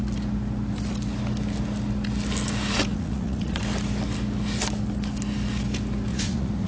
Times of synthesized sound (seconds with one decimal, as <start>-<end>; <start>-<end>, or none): 2.9-3.6; 6.1-6.7

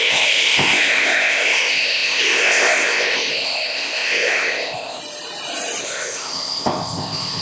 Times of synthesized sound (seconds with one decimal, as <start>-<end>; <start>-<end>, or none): 0.0-5.0; 5.8-7.4